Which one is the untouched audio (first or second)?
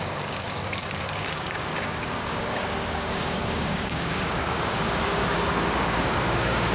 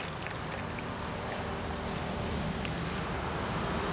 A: second